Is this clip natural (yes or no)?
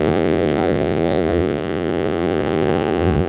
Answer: no